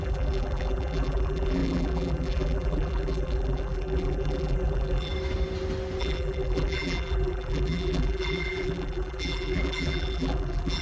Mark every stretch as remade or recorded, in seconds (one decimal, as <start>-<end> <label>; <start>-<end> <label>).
0.0-5.1 remade; 5.1-6.0 recorded; 6.0-10.8 remade